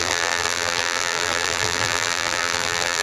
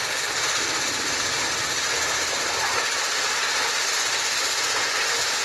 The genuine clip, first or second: second